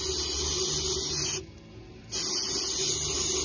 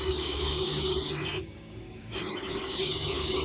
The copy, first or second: second